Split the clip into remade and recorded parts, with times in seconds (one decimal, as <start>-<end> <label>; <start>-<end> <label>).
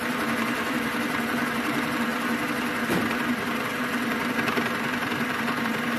0.0-2.1 remade; 2.1-2.9 recorded; 2.9-6.0 remade